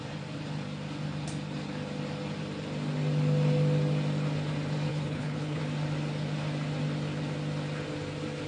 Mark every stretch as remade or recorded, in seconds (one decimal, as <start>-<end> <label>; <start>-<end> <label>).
0.0-4.9 recorded; 4.9-5.6 remade; 5.6-8.5 recorded